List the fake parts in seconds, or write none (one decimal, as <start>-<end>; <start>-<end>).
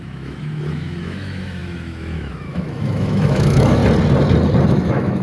0.0-3.8; 4.7-5.2